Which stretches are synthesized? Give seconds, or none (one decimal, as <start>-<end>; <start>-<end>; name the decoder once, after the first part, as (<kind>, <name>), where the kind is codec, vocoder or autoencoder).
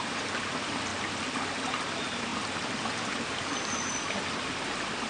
none